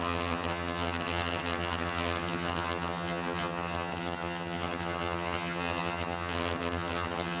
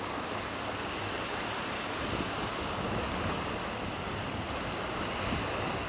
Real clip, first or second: second